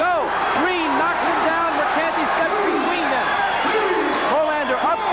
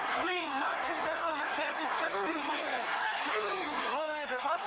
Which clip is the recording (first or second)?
first